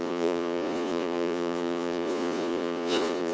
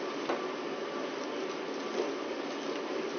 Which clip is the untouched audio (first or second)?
second